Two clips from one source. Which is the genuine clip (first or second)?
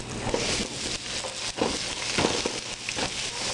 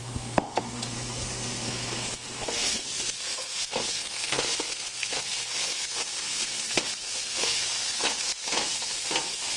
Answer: first